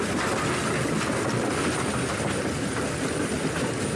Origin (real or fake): real